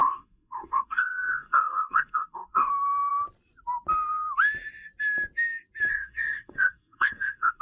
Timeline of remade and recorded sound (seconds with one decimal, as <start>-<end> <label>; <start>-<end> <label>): 0.0-2.7 remade; 2.7-5.9 recorded; 5.9-7.6 remade